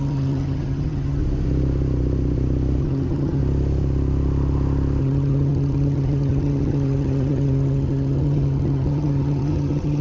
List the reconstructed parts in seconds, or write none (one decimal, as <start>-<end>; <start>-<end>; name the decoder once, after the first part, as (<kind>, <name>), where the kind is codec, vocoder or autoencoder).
0.0-1.2 (vocoder, HiFi-GAN); 2.8-3.4; 5.0-10.0

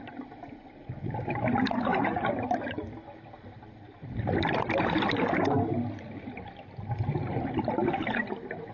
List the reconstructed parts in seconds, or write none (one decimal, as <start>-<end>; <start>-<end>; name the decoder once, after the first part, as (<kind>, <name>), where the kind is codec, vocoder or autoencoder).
none

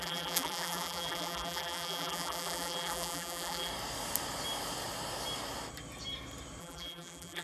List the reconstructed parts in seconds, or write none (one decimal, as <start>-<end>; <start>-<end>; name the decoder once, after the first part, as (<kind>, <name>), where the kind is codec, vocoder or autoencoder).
0.0-3.7 (vocoder, BigVGAN v2); 6.6-7.4

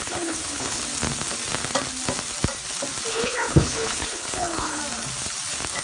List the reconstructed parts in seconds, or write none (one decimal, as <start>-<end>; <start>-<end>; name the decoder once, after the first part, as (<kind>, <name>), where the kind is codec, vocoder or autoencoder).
0.0-0.8 (codec, HILCodec); 3.1-4.8

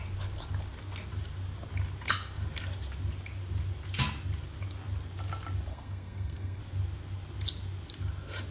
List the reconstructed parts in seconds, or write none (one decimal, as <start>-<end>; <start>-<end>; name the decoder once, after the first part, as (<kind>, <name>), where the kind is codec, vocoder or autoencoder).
5.7-6.6 (codec, SNAC)